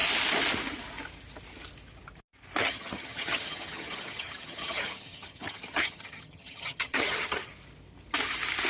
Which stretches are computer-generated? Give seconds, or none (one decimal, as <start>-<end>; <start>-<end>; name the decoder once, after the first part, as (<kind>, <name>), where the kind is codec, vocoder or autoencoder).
2.6-7.5 (vocoder, HiFi-GAN)